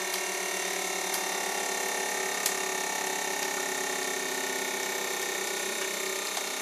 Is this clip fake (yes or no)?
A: no